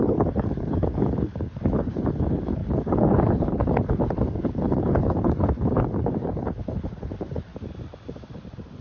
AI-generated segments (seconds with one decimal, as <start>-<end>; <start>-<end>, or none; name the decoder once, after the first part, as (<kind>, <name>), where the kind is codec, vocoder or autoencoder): 0.0-7.5 (codec, HILCodec)